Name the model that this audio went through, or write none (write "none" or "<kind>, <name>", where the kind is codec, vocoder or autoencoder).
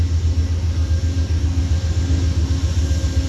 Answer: none